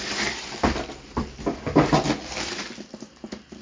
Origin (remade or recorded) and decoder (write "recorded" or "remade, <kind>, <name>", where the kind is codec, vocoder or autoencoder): recorded